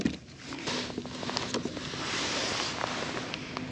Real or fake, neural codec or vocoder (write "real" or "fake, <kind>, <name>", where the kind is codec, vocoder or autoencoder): real